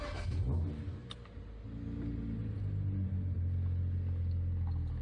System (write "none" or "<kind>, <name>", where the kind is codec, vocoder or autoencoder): none